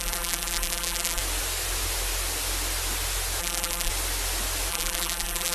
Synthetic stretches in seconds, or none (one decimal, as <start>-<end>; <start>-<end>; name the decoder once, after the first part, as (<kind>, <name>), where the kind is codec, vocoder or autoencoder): 0.0-1.2 (vocoder, BigVGAN v2); 3.4-3.9; 4.7-5.5